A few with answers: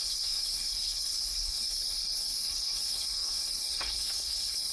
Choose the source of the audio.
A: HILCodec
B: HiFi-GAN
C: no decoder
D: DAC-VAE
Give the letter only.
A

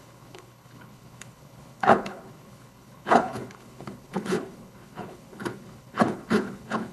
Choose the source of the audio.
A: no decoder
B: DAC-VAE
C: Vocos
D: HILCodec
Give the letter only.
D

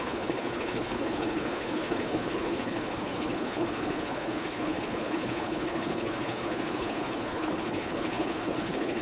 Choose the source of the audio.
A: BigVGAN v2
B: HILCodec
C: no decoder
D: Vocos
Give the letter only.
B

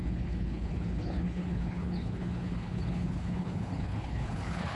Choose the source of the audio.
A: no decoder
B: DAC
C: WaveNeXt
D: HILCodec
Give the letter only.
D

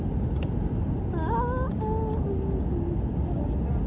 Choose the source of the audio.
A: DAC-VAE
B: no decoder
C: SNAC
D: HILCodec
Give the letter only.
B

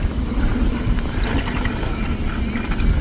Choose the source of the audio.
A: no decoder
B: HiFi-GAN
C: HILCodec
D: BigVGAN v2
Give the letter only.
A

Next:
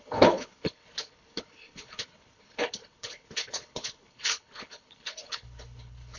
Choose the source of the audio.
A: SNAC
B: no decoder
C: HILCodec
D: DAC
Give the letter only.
C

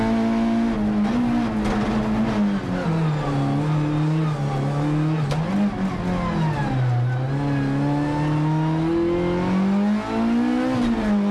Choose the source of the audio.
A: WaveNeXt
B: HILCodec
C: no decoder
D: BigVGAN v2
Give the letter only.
C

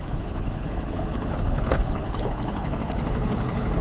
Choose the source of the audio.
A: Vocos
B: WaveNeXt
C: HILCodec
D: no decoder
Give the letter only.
C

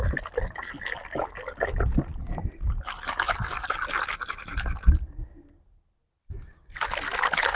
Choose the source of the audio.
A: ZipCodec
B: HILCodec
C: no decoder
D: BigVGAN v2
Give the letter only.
C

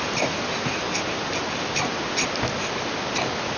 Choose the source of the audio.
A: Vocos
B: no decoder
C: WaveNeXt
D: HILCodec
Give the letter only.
B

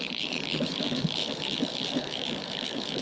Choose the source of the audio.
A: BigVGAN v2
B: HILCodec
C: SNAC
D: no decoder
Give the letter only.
B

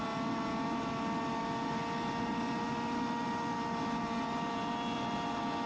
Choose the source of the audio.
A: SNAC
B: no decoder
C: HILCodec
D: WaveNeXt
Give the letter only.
B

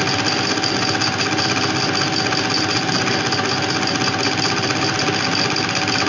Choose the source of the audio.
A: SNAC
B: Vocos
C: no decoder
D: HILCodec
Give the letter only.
C